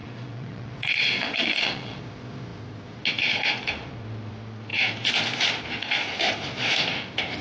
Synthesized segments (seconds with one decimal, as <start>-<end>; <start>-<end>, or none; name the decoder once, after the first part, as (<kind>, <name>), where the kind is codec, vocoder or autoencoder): 0.0-2.0 (vocoder, WaveNeXt)